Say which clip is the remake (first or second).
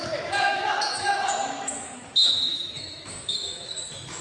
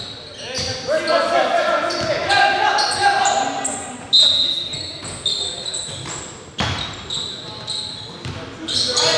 first